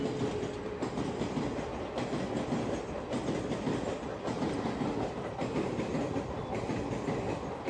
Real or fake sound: real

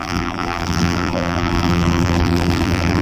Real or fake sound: fake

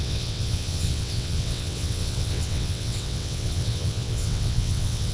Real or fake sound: fake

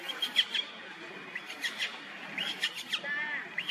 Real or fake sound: real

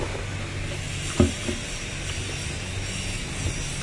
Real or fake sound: real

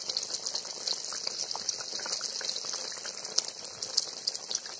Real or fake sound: real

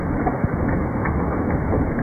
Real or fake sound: fake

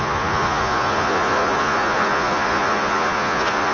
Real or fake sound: fake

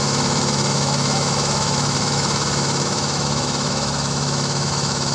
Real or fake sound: fake